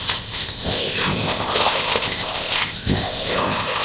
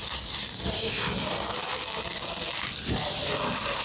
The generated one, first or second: first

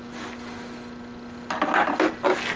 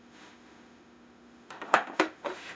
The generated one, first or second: second